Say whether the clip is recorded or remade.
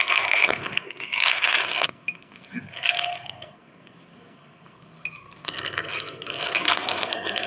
remade